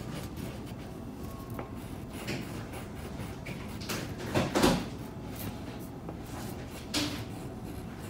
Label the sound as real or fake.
real